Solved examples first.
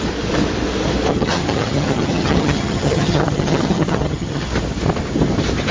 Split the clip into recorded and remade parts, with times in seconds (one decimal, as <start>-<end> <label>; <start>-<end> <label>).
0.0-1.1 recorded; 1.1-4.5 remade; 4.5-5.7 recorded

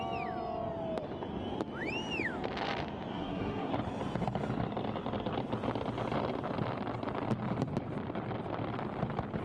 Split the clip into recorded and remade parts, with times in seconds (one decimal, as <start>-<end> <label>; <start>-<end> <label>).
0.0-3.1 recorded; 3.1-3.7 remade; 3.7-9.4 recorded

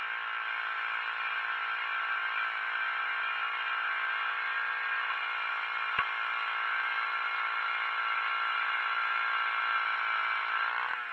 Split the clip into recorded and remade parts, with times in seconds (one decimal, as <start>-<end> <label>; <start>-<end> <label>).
0.0-11.1 recorded